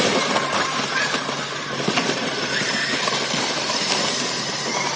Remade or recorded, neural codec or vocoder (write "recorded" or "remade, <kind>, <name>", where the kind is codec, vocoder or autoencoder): remade, vocoder, BigVGAN v2